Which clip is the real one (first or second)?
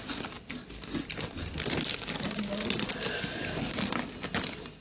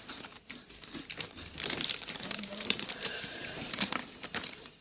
first